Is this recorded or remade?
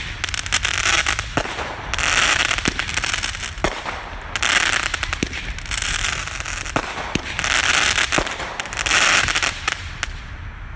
recorded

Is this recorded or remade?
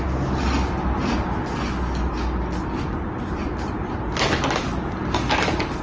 recorded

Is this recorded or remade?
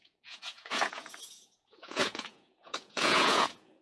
remade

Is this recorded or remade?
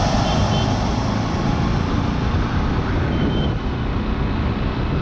recorded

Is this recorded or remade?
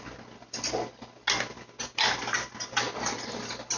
recorded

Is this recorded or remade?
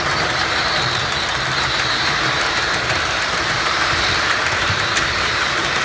remade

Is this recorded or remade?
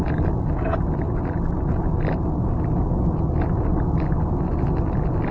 recorded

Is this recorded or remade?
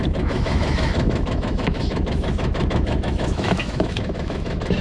remade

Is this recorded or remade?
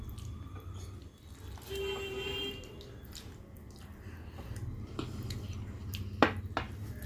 recorded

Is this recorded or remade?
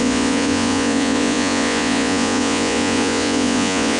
remade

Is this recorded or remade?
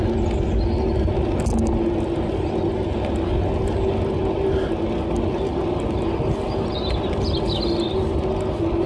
recorded